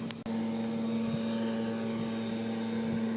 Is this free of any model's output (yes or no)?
yes